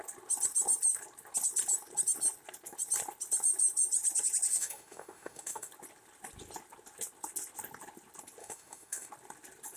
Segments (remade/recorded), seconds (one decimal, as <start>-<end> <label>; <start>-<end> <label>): 0.0-4.5 recorded; 4.5-5.7 remade; 5.7-8.4 recorded; 8.4-9.1 remade; 9.1-9.8 recorded